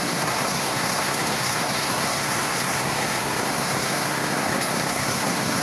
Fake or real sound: fake